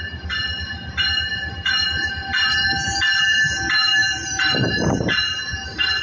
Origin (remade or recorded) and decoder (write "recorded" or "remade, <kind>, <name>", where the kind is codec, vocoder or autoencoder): remade, vocoder, BigVGAN v2